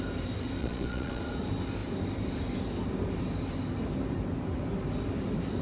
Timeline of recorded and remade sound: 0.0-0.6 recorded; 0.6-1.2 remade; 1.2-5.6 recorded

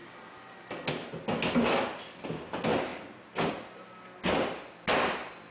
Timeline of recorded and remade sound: 0.0-5.5 recorded

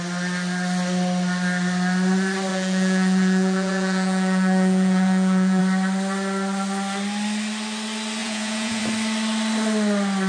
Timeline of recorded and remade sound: 0.0-2.5 recorded; 2.5-5.6 remade; 5.6-8.2 recorded; 8.2-8.8 remade; 8.8-10.3 recorded

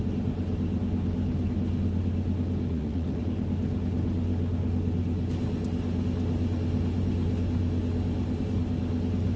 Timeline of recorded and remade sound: 0.0-2.7 recorded; 2.7-3.2 remade; 3.2-9.4 recorded

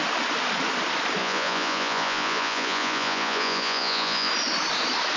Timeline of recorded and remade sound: 0.0-1.2 recorded; 1.2-4.3 remade; 4.3-5.2 recorded

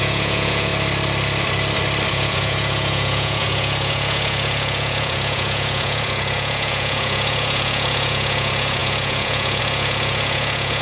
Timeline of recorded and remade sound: 0.0-0.7 remade; 0.7-2.1 recorded; 2.1-10.8 remade